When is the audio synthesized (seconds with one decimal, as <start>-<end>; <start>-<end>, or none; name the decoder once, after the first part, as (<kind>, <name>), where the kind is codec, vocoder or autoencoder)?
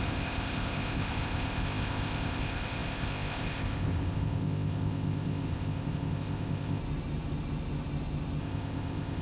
0.0-6.8 (codec, ZipCodec); 8.4-9.2